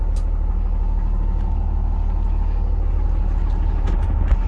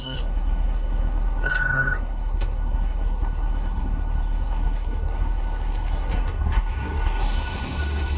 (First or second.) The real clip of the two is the first